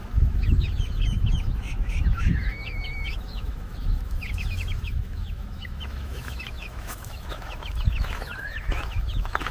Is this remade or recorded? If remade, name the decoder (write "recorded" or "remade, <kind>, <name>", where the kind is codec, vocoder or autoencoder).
remade, autoencoder, DAC-VAE